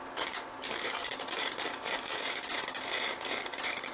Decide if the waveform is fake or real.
fake